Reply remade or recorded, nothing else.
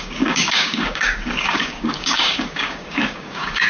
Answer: remade